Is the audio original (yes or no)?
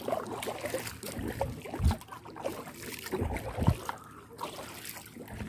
yes